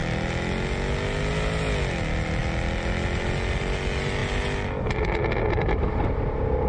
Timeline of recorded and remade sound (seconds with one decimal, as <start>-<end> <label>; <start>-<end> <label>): 0.0-6.7 recorded